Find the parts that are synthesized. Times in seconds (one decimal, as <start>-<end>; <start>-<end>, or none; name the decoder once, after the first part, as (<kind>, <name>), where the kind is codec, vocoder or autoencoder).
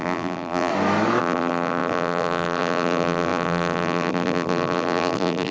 0.0-0.7 (vocoder, BigVGAN v2); 1.2-5.5